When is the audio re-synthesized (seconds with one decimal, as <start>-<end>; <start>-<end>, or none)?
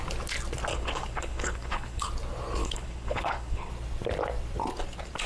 0.7-2.1; 2.6-3.7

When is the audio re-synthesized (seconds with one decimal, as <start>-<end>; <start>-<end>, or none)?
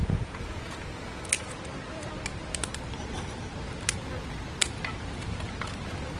0.0-1.5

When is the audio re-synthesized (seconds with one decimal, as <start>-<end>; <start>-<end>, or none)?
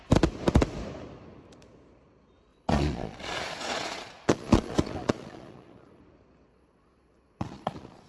2.5-6.0; 6.5-8.1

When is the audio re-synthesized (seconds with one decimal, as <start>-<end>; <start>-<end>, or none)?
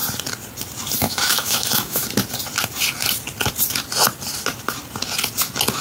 1.0-2.0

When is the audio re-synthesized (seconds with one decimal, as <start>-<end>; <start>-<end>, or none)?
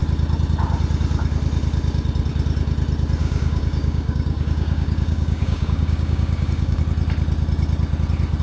3.2-6.8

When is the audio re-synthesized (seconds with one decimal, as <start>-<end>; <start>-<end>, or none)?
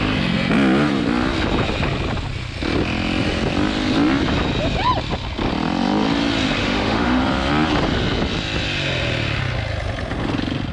6.6-7.2